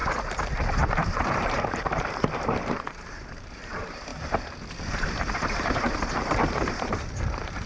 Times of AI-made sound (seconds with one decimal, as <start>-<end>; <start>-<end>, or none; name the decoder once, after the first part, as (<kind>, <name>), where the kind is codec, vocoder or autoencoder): 0.7-4.1 (vocoder, BigVGAN v2); 4.9-7.7